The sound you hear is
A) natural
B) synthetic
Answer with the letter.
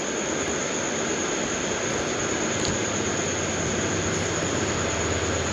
A